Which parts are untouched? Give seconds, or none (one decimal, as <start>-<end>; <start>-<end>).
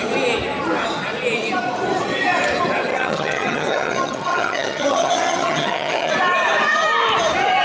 0.0-2.9; 6.1-7.6